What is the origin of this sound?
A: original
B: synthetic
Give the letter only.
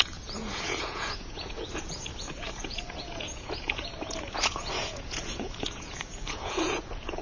B